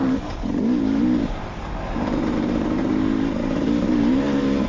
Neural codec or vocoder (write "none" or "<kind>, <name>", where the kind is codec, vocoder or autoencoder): vocoder, BigVGAN v2